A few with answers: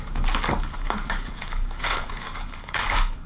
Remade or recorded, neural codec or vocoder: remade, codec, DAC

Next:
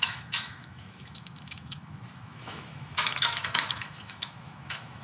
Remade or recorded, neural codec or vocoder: remade, autoencoder, DAC-VAE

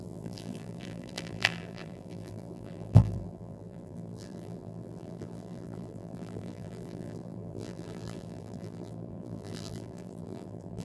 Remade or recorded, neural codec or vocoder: remade, vocoder, BigVGAN v2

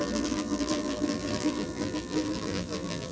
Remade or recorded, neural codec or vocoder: remade, vocoder, BigVGAN v2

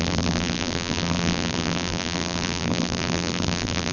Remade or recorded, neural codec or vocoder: remade, vocoder, BigVGAN v2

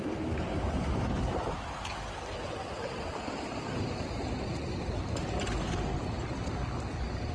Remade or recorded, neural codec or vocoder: remade, vocoder, BigVGAN v2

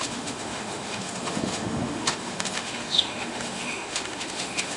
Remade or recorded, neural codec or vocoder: remade, autoencoder, DAC-VAE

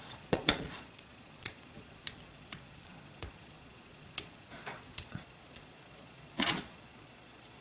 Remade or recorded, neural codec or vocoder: remade, vocoder, Vocos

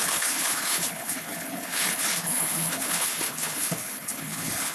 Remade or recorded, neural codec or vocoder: remade, codec, HILCodec